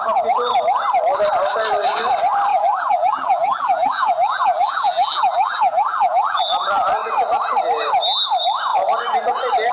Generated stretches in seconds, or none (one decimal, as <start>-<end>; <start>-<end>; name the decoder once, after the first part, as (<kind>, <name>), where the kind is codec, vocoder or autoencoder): 2.5-6.4 (vocoder, BigVGAN v2)